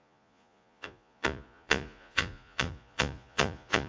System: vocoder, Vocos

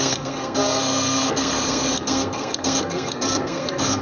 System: codec, SNAC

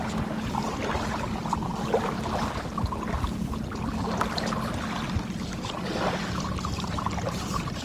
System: none